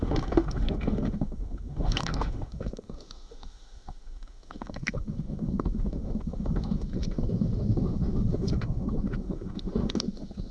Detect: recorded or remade remade